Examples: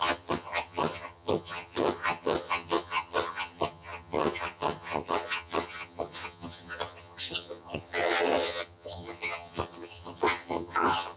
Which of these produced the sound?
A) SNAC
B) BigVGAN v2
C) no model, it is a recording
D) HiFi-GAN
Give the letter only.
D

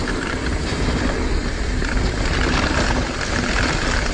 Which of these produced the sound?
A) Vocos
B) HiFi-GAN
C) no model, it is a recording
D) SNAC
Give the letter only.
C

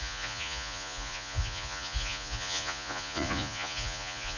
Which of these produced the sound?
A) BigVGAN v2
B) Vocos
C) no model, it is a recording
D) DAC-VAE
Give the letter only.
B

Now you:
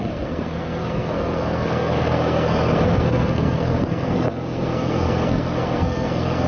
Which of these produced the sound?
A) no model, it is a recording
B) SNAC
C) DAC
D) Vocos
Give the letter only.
B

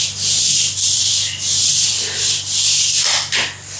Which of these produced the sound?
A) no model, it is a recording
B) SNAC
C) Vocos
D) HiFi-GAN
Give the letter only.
A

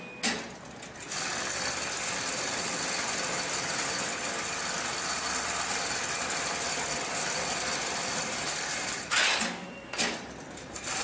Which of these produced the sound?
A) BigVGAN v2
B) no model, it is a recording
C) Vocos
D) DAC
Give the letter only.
B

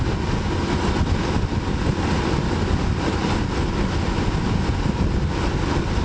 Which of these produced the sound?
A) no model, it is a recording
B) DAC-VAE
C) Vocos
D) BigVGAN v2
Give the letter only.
A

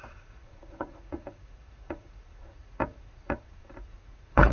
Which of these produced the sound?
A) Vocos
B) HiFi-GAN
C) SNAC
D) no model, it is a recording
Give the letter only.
A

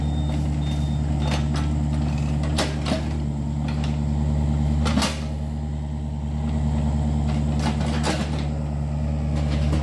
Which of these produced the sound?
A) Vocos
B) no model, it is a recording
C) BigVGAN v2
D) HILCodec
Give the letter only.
B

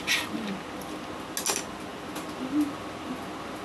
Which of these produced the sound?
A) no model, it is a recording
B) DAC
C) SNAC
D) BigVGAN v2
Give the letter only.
A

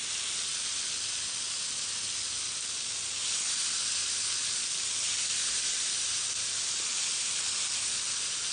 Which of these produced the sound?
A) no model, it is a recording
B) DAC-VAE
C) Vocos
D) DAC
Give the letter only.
A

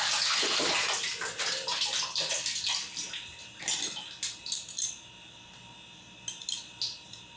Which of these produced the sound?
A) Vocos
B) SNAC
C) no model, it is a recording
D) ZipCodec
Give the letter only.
C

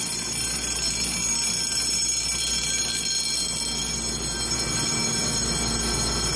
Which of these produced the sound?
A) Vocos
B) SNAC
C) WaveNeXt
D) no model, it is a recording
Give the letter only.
D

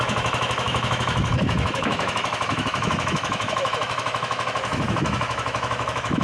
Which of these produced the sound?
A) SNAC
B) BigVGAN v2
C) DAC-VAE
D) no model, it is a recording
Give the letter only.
C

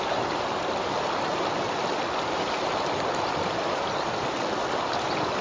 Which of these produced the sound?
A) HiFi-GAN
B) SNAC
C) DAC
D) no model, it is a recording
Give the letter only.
D